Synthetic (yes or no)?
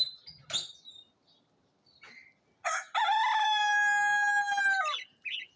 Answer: no